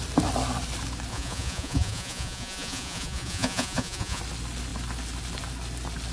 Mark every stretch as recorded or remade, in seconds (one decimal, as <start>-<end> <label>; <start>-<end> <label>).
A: 0.0-1.1 recorded; 1.1-4.2 remade; 4.2-6.1 recorded